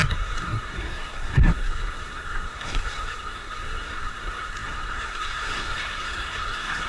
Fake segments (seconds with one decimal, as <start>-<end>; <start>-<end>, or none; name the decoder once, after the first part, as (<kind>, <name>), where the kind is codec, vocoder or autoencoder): 0.0-6.9 (codec, SNAC)